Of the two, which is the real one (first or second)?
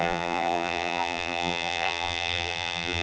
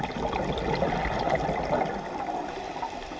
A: second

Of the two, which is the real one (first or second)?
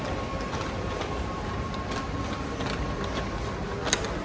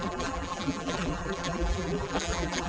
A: first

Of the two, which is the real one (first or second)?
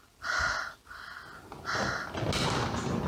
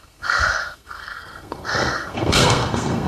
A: first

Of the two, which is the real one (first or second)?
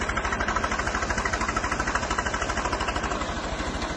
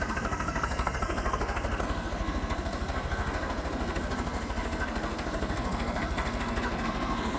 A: first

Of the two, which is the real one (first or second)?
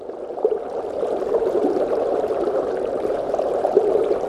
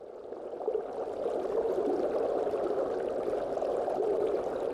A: second